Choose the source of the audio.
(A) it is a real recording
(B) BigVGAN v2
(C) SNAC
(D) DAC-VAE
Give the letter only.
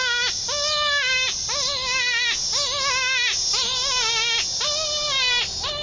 A